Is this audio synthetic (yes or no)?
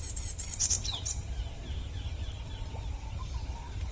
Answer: yes